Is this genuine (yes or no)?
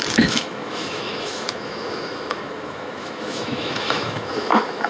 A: no